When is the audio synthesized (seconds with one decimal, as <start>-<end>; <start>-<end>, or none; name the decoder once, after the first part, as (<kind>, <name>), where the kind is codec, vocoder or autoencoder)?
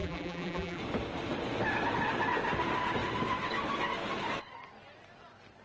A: 0.0-0.8 (vocoder, BigVGAN v2)